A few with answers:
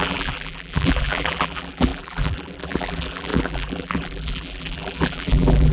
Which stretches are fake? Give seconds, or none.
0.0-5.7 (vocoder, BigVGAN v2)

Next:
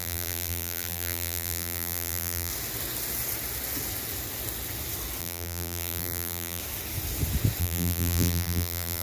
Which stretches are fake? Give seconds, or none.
0.0-2.5 (vocoder, BigVGAN v2); 5.2-6.6; 7.6-9.0